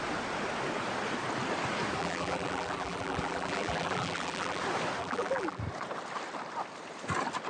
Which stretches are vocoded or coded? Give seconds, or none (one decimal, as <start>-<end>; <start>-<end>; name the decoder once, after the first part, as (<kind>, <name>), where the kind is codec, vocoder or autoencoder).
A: 2.0-4.6 (vocoder, BigVGAN v2); 5.0-5.6